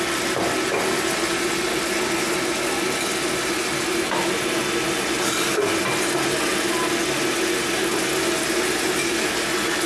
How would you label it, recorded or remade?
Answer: recorded